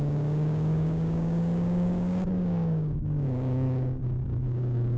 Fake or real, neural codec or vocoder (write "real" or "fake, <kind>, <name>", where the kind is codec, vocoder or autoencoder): fake, codec, DAC